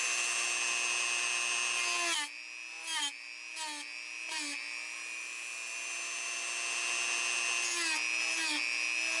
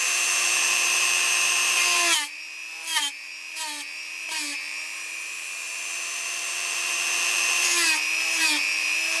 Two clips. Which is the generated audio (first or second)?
second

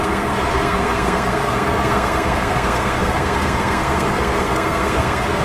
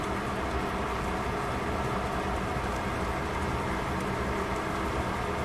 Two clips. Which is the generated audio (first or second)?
first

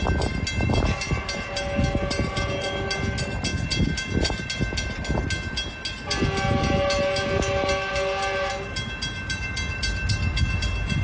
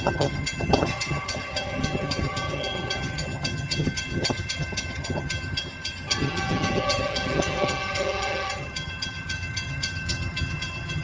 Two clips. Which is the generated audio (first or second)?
second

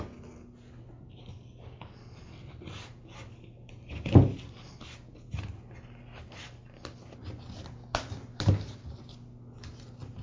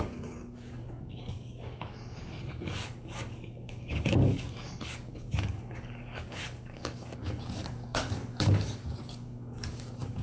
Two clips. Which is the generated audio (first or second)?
second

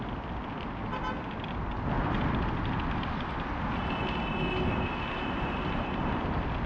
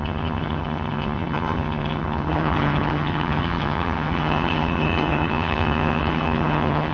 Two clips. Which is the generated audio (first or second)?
second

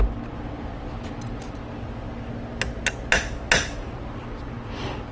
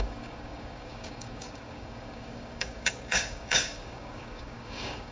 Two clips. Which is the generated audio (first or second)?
second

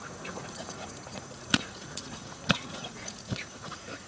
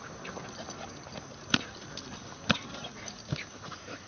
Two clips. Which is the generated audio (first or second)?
first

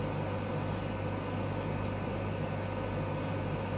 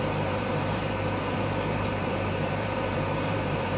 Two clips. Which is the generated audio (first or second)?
second